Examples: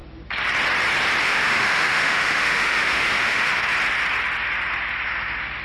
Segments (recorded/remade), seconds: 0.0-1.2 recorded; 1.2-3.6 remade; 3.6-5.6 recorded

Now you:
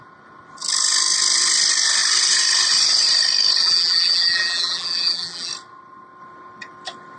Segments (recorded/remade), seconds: 0.0-3.6 recorded; 3.6-5.5 remade; 5.5-7.2 recorded

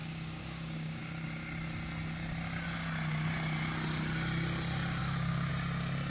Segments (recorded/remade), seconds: 0.0-1.0 remade; 1.0-5.0 recorded; 5.0-5.5 remade; 5.5-6.1 recorded